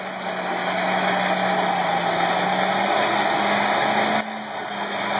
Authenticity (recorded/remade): recorded